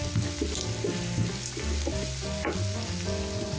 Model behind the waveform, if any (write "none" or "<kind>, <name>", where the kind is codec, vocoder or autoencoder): none